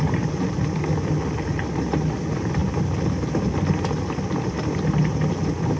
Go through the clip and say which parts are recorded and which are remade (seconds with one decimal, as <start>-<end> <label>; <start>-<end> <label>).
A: 0.0-5.8 recorded